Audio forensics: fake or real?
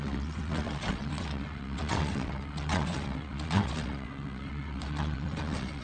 fake